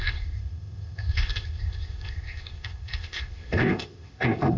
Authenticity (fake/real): fake